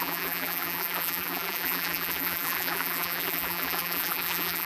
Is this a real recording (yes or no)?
no